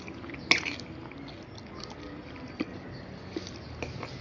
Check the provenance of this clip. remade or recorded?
recorded